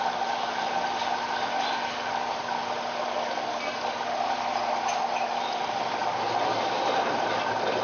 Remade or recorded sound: recorded